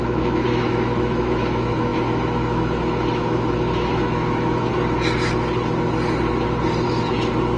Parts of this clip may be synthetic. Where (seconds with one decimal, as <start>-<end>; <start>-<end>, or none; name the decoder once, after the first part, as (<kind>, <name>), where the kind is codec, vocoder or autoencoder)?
0.0-4.7 (autoencoder, DAC-VAE)